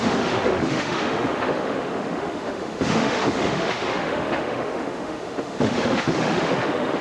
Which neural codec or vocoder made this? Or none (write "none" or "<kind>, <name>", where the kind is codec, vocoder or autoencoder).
autoencoder, DAC-VAE